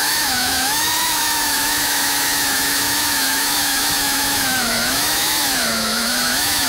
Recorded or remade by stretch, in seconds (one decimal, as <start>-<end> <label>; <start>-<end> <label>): 0.0-6.7 remade